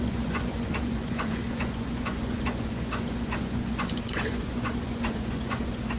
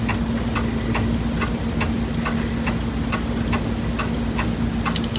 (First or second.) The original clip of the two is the second